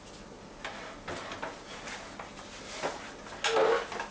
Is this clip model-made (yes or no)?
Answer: no